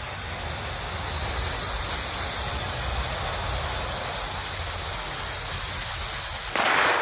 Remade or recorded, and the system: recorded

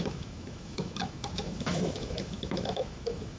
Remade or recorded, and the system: remade, autoencoder, DAC-VAE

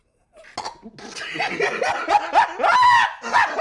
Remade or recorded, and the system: recorded